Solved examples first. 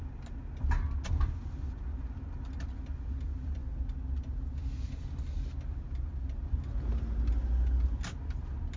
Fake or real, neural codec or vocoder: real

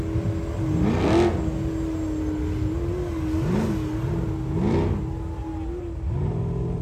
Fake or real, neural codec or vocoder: real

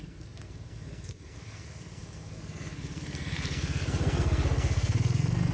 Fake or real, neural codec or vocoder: fake, codec, SNAC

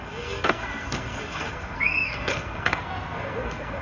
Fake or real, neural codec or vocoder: fake, codec, SNAC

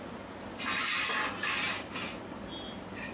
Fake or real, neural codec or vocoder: real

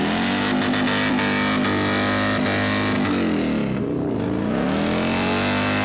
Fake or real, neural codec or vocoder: real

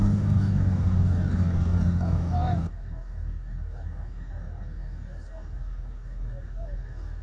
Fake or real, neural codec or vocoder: fake, codec, DAC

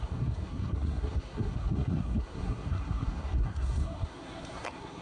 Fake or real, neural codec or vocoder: fake, codec, SNAC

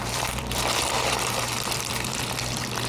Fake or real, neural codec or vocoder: fake, vocoder, BigVGAN v2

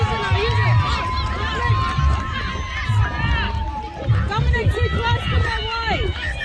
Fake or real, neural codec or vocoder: real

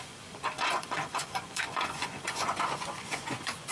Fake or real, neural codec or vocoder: fake, vocoder, Vocos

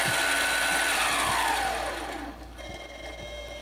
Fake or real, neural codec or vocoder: real